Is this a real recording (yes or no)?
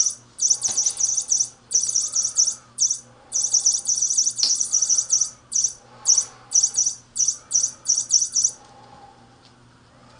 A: yes